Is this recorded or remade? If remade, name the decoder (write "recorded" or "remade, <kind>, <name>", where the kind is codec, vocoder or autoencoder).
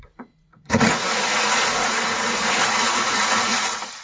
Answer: remade, vocoder, Vocos